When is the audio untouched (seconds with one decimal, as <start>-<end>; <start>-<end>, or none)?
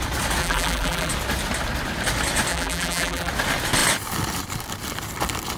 0.0-0.4; 1.1-2.5; 3.3-5.6